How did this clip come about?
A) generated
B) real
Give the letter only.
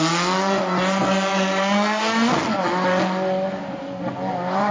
B